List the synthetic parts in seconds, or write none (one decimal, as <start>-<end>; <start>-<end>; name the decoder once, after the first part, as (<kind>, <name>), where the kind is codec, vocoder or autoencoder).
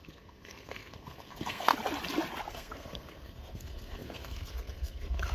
0.0-1.7 (codec, SNAC); 2.5-5.3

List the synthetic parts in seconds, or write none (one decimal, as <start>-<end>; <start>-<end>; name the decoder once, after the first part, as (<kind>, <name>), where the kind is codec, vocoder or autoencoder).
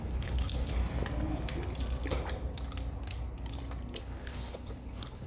0.0-0.8 (codec, HILCodec); 4.0-5.3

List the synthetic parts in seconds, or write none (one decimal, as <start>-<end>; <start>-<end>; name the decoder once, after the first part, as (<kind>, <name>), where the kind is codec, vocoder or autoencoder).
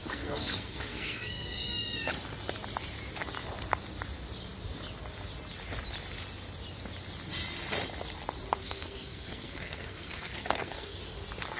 0.0-2.1 (codec, SNAC); 8.6-11.0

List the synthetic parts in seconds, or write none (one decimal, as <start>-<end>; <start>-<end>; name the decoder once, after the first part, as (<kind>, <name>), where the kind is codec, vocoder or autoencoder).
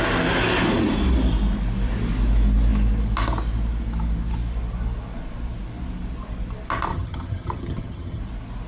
6.9-8.2 (vocoder, HiFi-GAN)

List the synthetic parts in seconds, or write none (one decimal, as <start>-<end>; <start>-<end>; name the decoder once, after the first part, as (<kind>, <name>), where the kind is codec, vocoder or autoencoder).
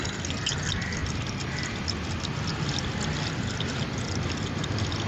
none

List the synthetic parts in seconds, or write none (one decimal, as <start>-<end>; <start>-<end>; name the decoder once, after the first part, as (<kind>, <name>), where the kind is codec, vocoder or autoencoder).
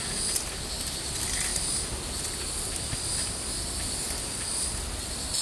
none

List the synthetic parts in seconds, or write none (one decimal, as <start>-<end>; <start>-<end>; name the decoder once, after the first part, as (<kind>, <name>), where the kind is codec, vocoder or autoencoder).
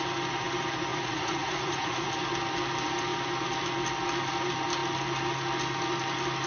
0.9-2.1 (vocoder, Vocos)